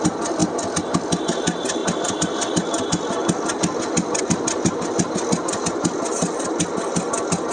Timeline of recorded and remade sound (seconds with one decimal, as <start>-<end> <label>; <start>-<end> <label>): 0.0-7.5 recorded